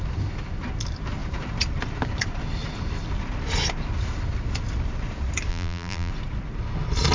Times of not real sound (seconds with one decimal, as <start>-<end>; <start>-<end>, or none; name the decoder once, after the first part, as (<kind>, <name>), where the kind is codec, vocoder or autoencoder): 5.5-6.1 (vocoder, BigVGAN v2)